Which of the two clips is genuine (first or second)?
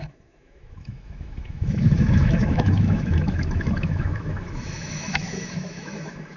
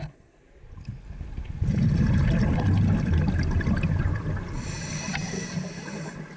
second